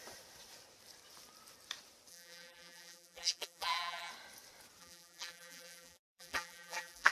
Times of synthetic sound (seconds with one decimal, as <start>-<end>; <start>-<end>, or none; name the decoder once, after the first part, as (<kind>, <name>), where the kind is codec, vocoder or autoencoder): 2.1-4.1 (vocoder, BigVGAN v2); 4.8-7.1